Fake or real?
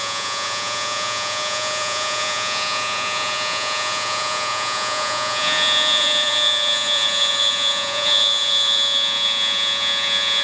fake